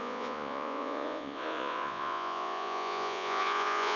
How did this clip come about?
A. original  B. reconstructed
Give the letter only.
B